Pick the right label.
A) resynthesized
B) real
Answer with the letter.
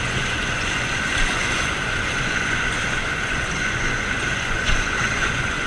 A